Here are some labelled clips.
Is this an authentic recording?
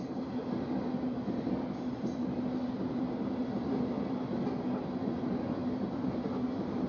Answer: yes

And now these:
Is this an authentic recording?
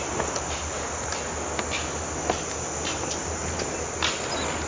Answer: yes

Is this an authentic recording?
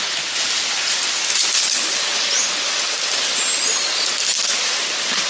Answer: yes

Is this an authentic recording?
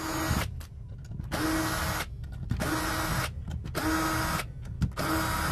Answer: yes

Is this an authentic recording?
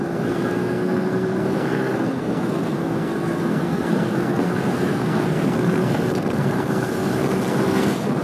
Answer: no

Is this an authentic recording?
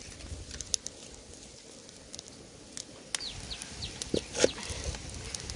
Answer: yes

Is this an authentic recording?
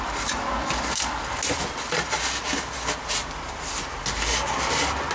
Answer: yes